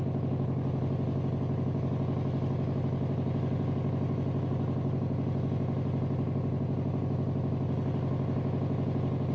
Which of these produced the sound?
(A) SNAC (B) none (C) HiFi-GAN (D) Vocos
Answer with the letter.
B